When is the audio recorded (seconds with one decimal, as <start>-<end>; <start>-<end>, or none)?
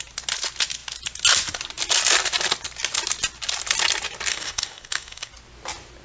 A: 0.0-4.3; 5.3-6.0